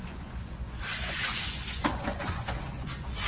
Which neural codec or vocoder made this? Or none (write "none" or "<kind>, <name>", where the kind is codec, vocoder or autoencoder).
vocoder, Vocos